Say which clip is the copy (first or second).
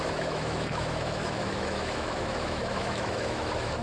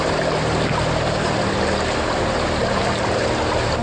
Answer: first